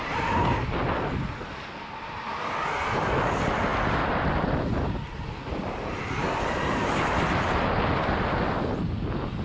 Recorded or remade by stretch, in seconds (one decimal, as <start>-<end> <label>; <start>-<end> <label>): 0.0-9.4 recorded